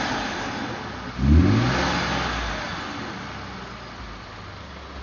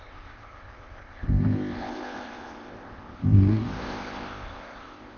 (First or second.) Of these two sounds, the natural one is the first